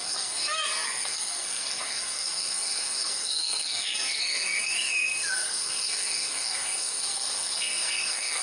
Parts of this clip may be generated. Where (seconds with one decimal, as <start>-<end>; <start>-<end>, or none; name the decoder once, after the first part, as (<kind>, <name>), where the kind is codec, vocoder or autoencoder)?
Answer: 0.0-8.4 (codec, SNAC)